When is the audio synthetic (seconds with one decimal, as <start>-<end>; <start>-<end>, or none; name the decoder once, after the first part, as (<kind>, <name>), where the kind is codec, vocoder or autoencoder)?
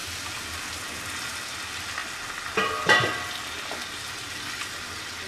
none